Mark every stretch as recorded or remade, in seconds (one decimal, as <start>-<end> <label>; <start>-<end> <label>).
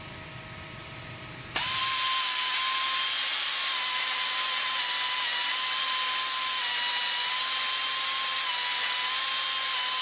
0.0-0.8 recorded; 0.8-1.8 remade; 1.8-3.3 recorded; 3.3-4.3 remade; 4.3-10.0 recorded